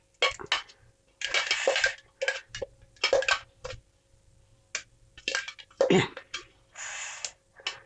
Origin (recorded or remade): recorded